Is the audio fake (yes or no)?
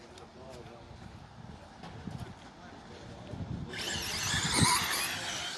no